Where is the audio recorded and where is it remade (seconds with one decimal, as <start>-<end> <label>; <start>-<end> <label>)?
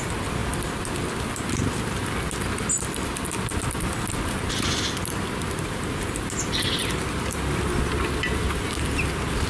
0.0-9.5 recorded